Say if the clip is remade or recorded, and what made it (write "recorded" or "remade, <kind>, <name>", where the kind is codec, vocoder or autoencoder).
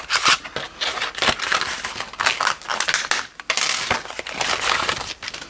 recorded